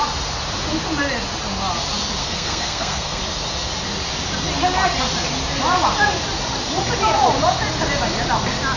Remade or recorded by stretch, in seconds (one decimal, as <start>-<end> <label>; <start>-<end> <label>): 0.0-2.2 recorded; 2.2-3.2 remade; 3.2-8.8 recorded